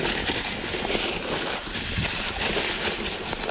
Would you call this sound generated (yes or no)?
no